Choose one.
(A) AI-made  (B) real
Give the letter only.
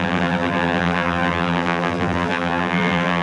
A